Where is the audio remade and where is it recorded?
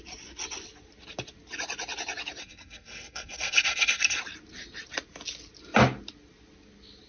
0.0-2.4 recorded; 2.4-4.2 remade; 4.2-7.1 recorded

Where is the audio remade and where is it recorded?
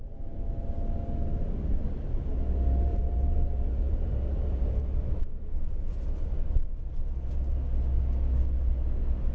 0.0-2.9 recorded; 2.9-4.8 remade; 4.8-9.3 recorded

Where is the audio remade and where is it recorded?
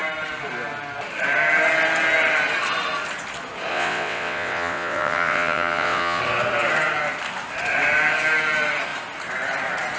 0.0-3.7 recorded; 3.7-6.2 remade; 6.2-10.0 recorded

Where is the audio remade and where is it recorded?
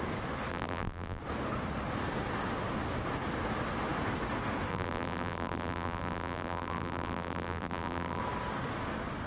0.0-0.5 recorded; 0.5-1.2 remade; 1.2-4.7 recorded; 4.7-8.2 remade; 8.2-9.3 recorded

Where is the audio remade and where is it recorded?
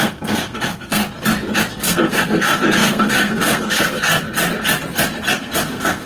0.0-1.0 remade; 1.0-1.7 recorded; 1.7-4.1 remade; 4.1-5.4 recorded; 5.4-6.1 remade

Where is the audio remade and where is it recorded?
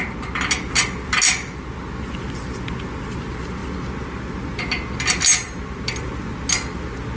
0.0-7.2 recorded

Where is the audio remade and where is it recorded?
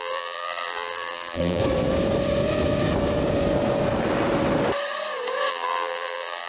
0.0-1.6 remade; 1.6-5.5 recorded; 5.5-6.5 remade